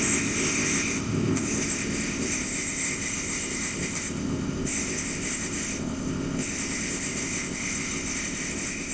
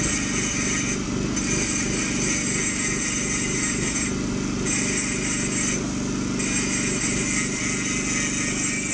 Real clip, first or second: second